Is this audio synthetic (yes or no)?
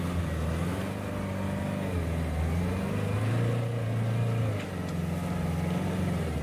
no